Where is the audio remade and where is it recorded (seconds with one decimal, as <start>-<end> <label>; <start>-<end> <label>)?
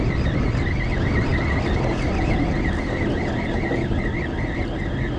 0.0-5.2 recorded